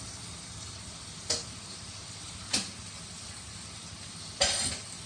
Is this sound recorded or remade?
recorded